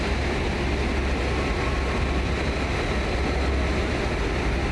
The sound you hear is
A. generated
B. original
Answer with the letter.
B